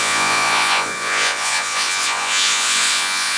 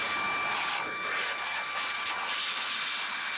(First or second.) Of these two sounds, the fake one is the first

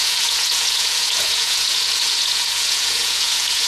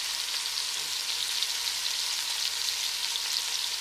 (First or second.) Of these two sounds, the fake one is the first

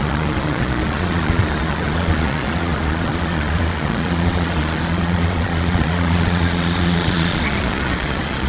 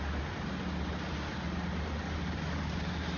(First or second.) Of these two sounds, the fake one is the first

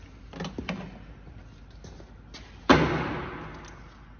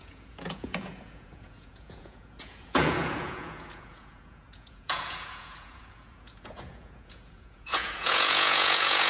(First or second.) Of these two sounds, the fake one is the second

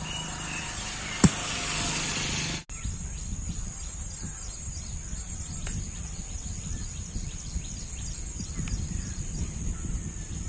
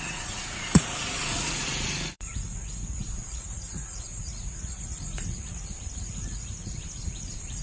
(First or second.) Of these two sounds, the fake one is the second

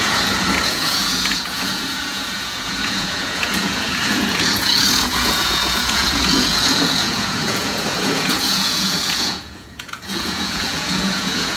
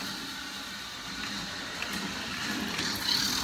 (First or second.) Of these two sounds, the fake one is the first